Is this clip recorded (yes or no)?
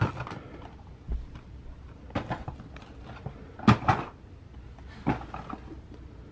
yes